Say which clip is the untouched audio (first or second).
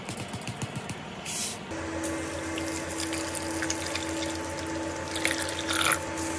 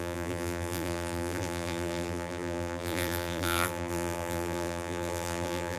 first